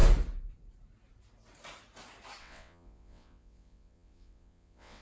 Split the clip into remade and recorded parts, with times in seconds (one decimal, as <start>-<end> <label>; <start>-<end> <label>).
0.0-2.4 recorded; 2.4-5.0 remade